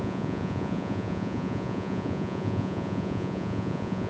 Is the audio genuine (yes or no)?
no